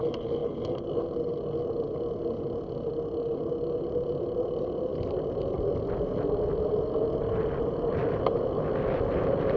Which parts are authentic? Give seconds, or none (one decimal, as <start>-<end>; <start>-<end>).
0.0-9.6